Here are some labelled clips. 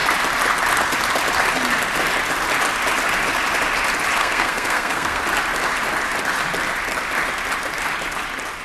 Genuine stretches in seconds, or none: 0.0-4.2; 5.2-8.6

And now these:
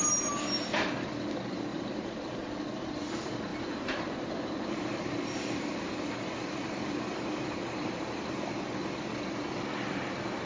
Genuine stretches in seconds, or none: 0.0-1.7; 2.3-3.5; 8.4-10.5

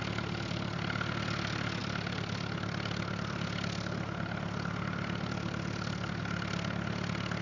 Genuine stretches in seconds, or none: 0.0-7.4

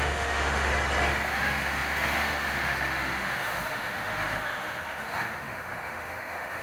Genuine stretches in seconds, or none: 0.7-1.3